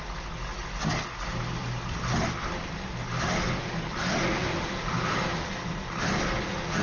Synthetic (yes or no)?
no